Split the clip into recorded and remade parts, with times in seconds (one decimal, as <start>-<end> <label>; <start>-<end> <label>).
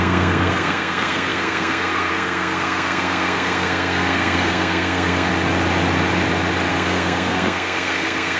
0.0-5.3 remade; 5.3-6.7 recorded; 6.7-8.4 remade